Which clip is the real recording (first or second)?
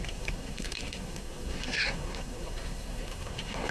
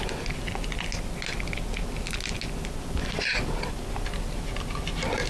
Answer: second